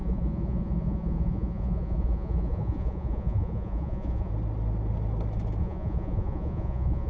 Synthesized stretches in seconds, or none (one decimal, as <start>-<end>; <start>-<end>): 0.0-4.3; 5.6-7.1

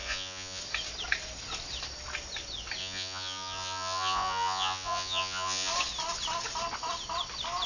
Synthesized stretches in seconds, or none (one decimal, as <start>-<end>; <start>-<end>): 0.0-0.6; 2.8-5.7

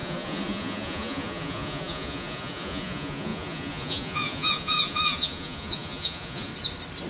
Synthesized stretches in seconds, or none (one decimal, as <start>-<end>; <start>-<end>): 0.0-6.5